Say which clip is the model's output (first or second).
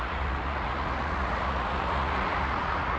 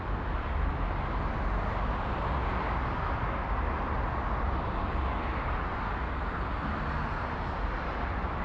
first